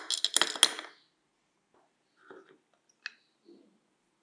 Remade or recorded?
recorded